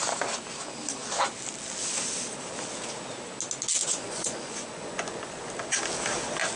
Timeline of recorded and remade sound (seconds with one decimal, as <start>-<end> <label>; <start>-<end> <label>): 0.0-3.8 recorded; 3.8-5.5 remade; 5.5-6.6 recorded